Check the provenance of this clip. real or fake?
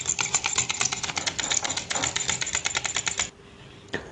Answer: real